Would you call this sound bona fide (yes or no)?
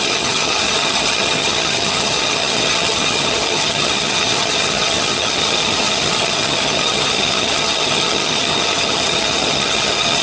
no